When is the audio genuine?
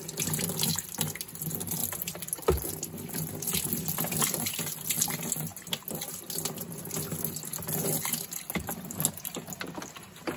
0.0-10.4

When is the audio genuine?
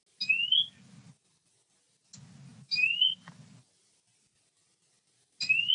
0.0-5.7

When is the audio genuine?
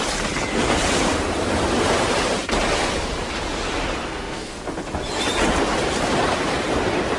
0.0-4.0; 4.6-7.2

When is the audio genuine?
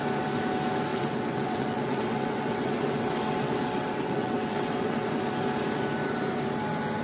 0.0-0.9; 5.1-7.0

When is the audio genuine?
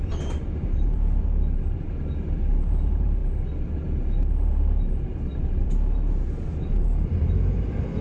3.2-3.7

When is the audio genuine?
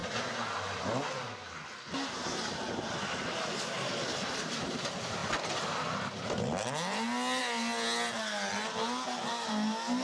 0.0-10.0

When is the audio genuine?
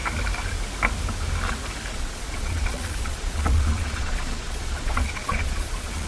0.0-1.9